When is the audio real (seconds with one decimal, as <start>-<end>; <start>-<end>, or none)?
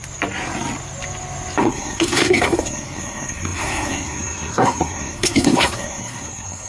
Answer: 0.0-1.6